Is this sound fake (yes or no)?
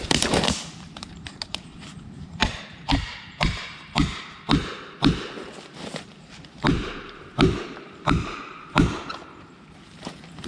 yes